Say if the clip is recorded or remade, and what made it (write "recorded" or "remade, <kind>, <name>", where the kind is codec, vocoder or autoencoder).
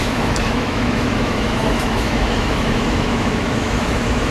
remade, autoencoder, DAC-VAE